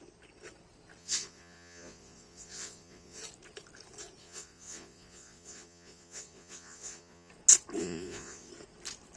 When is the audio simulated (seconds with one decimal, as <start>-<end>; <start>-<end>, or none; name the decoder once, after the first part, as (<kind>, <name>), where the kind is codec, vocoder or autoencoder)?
1.0-3.2 (vocoder, Vocos); 4.2-7.3; 7.8-8.5